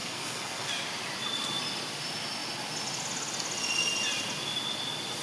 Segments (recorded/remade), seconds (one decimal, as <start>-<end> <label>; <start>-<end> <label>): 0.0-0.7 remade; 0.7-5.2 recorded